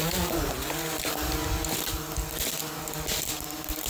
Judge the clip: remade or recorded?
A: recorded